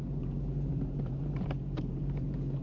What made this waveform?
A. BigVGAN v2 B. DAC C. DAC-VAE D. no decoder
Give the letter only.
A